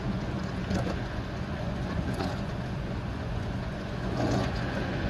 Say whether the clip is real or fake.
fake